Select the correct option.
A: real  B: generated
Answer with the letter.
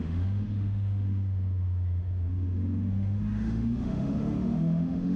B